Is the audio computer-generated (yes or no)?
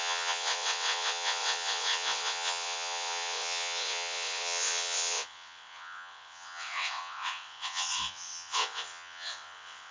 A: yes